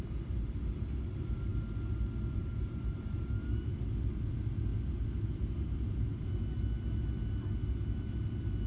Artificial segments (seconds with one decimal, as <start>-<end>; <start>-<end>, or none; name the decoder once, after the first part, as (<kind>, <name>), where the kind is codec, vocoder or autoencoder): 0.0-1.5 (vocoder, BigVGAN v2); 2.4-4.7; 8.0-8.7